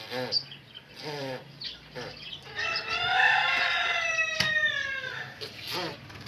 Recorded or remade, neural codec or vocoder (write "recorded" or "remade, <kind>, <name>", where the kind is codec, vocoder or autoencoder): remade, vocoder, BigVGAN v2